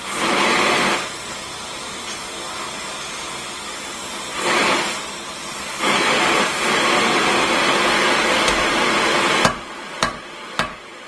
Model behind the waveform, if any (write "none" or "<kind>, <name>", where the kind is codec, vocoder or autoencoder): none